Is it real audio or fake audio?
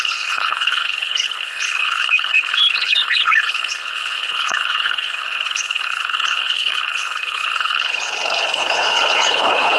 fake